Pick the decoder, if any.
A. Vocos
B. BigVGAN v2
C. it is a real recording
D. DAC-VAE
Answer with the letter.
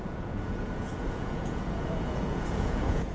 A